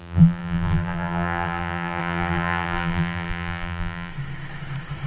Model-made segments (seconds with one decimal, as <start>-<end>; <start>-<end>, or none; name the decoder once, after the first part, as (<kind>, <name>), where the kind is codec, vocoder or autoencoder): 0.0-4.1 (vocoder, BigVGAN v2)